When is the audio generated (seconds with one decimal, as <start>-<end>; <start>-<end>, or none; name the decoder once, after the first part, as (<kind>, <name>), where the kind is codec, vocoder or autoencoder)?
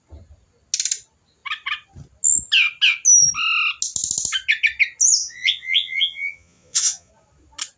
5.2-7.1 (vocoder, Vocos)